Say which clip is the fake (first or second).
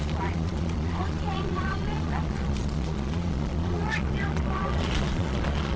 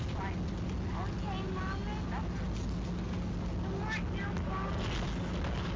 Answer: first